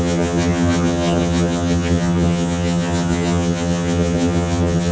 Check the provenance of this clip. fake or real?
fake